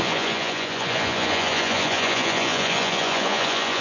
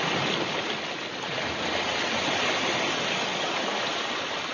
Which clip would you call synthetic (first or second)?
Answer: first